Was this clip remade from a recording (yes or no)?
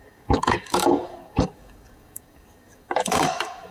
yes